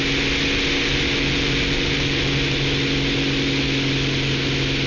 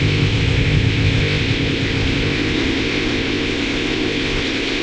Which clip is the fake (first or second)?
second